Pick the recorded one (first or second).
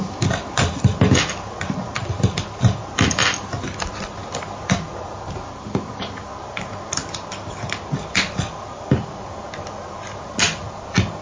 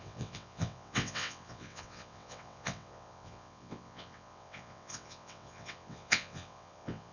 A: first